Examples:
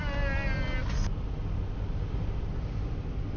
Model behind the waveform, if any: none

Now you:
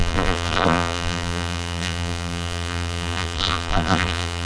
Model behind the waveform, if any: vocoder, BigVGAN v2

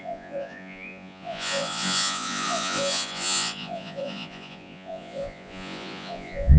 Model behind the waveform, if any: vocoder, Vocos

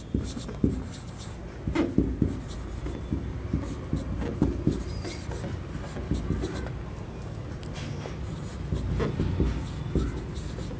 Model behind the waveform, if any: none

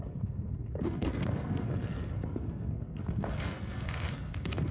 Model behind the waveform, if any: codec, SNAC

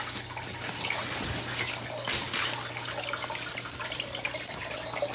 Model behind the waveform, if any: none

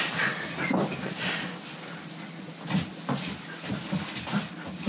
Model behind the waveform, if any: none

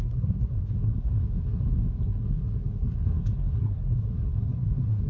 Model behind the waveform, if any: codec, SNAC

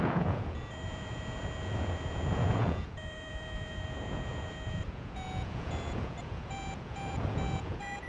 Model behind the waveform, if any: vocoder, Vocos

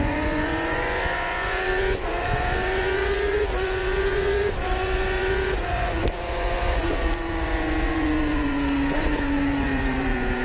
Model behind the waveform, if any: vocoder, Vocos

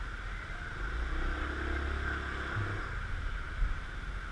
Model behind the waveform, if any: none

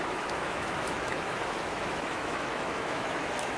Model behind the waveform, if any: autoencoder, DAC-VAE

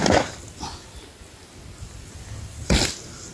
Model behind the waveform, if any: none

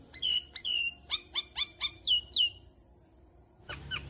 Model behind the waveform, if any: vocoder, BigVGAN v2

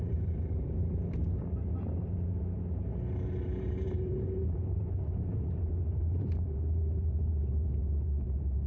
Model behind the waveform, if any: vocoder, BigVGAN v2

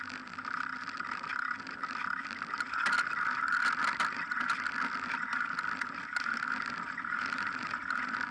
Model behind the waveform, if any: none